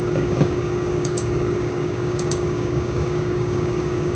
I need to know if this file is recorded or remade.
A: remade